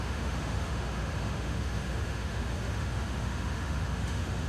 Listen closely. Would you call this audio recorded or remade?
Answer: remade